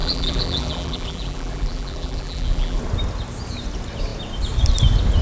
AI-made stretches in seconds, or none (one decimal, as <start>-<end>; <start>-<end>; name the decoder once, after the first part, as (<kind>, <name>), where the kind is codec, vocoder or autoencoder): 0.0-2.8 (vocoder, BigVGAN v2)